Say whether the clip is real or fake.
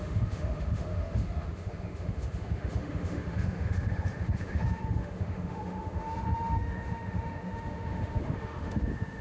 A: fake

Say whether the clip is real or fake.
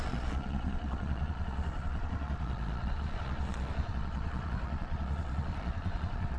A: fake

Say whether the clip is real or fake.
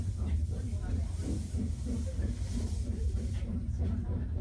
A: fake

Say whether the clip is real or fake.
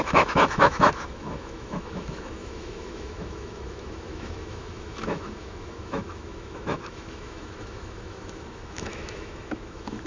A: fake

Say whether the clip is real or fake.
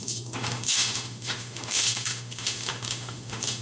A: fake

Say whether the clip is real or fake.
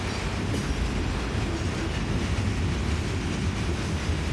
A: real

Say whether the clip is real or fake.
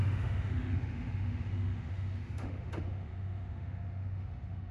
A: fake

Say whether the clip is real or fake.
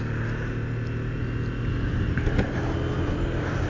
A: real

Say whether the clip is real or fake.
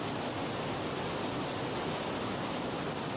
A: real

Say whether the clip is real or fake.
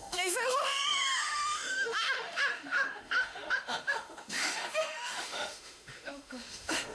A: fake